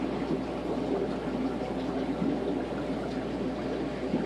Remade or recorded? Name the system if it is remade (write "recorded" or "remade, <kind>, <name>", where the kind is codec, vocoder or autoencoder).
recorded